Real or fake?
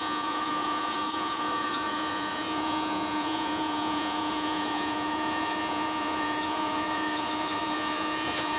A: fake